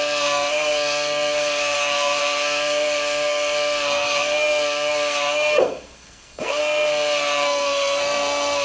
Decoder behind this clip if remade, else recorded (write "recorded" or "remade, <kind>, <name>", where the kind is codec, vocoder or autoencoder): remade, codec, SNAC